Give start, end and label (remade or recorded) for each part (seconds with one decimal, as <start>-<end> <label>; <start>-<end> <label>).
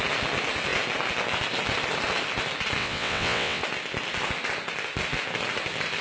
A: 0.0-2.8 recorded; 2.8-3.6 remade; 3.6-6.0 recorded